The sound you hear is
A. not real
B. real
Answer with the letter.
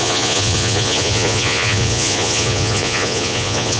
A